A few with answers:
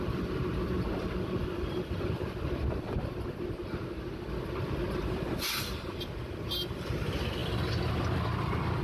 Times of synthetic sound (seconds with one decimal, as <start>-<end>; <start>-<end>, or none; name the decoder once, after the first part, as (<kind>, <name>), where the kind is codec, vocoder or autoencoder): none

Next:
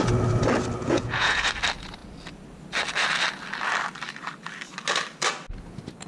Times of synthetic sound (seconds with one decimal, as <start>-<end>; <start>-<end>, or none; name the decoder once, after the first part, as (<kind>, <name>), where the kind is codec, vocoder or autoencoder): 0.8-1.5 (vocoder, Vocos)

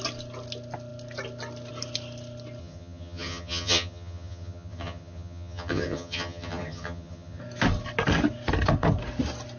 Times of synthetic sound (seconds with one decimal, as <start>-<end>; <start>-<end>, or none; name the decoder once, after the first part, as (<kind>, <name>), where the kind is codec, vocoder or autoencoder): 2.6-7.4 (vocoder, HiFi-GAN)